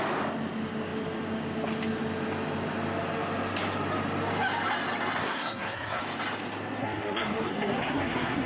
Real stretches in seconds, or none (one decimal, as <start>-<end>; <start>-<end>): 0.0-5.2; 6.0-6.8

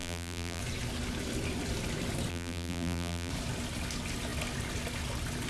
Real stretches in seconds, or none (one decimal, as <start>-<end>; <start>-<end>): 0.6-2.3; 3.3-5.5

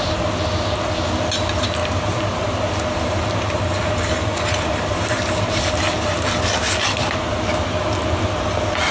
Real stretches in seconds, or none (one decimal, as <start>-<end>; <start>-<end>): 0.0-1.8; 7.0-8.9